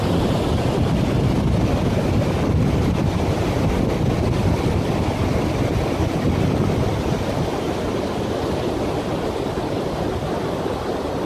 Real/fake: real